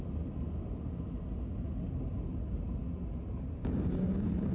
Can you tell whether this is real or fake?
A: real